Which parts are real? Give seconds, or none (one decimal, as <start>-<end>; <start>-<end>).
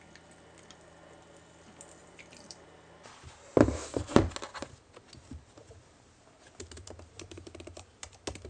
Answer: 0.0-2.0; 2.7-3.8; 4.3-8.5